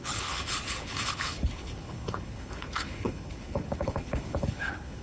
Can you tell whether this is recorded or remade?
remade